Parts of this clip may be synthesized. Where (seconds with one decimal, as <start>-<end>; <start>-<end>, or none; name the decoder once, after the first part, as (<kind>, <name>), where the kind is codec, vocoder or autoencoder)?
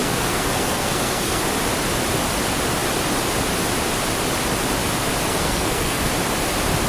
0.0-1.4 (codec, SNAC); 5.3-6.1